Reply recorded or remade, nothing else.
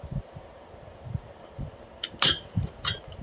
remade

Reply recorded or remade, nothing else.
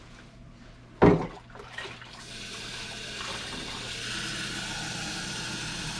recorded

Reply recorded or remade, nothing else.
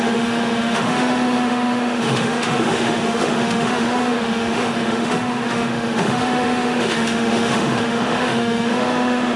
remade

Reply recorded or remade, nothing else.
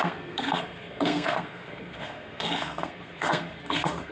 remade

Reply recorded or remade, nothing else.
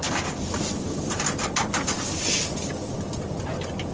recorded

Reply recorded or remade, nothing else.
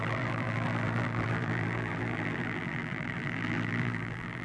remade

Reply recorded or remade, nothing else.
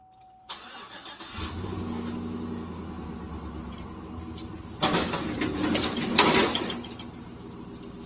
recorded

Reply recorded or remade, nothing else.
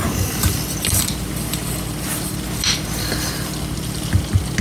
recorded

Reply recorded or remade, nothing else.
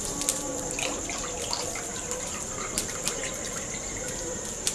remade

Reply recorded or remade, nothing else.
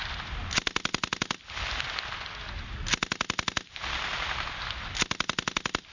recorded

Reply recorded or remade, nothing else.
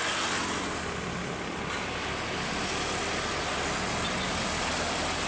recorded